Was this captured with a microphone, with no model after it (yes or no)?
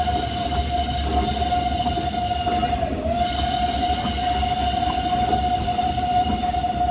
yes